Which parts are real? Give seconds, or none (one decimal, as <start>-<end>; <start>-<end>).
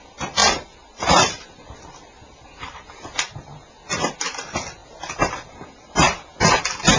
0.0-0.4; 3.7-4.8; 6.5-7.0